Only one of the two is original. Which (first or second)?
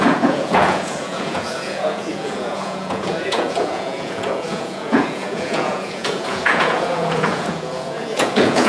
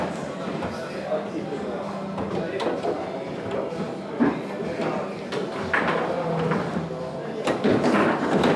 second